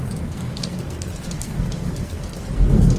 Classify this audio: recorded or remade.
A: remade